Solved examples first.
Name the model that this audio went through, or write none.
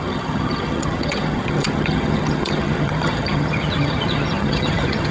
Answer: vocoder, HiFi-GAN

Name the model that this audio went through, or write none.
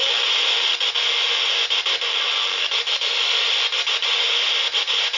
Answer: none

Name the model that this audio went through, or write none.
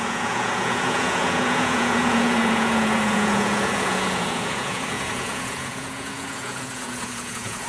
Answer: vocoder, Vocos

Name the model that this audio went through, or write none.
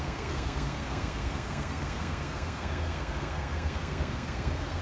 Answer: codec, SNAC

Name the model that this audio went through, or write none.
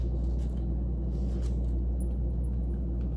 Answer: none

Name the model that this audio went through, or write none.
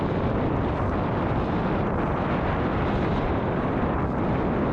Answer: vocoder, BigVGAN v2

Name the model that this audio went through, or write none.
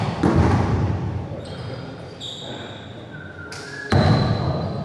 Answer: none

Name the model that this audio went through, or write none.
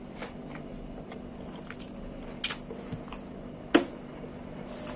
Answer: none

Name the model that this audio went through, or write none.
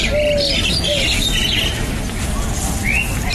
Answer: none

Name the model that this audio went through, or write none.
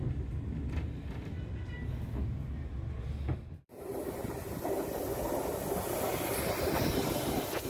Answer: none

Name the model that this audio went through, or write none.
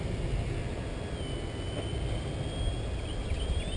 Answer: none